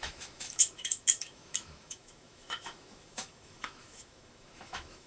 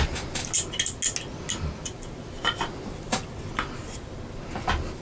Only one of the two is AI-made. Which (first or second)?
first